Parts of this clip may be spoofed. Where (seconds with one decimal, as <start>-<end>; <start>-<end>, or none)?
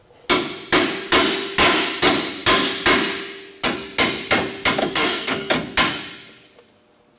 4.8-5.5